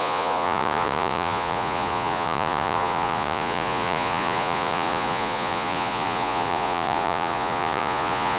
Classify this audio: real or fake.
fake